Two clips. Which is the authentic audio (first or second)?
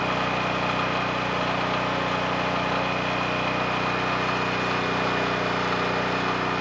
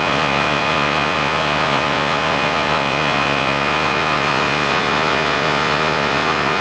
first